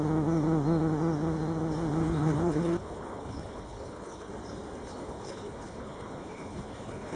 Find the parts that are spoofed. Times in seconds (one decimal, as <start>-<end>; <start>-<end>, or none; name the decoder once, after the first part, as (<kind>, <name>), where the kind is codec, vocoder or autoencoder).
2.0-4.3 (codec, HILCodec); 4.8-7.2